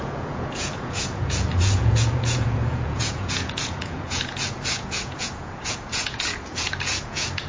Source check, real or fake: fake